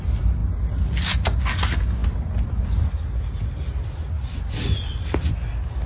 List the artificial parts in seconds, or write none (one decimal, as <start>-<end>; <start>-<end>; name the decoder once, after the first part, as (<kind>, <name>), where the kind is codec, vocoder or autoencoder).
none